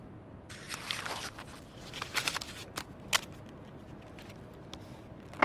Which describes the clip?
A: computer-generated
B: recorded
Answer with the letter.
B